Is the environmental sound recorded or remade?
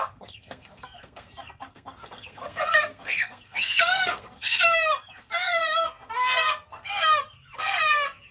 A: remade